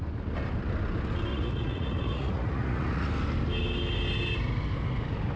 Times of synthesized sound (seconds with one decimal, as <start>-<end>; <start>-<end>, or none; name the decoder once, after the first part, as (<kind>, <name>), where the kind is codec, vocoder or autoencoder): 1.3-3.1 (vocoder, Vocos)